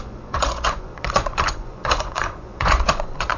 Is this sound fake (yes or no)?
yes